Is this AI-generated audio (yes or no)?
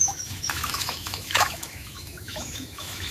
yes